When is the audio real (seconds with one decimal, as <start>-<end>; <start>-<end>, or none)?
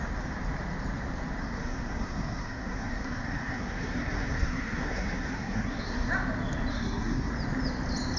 0.0-1.4; 6.1-6.7; 7.3-8.2